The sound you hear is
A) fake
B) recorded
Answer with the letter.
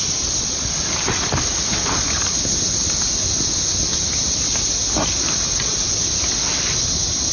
B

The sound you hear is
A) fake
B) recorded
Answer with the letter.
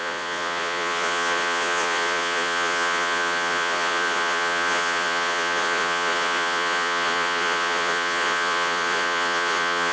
A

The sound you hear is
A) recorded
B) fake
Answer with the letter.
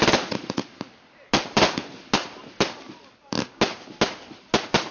A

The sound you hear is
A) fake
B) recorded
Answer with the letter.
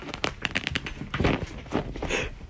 A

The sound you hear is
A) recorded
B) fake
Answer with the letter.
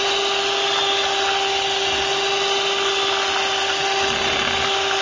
A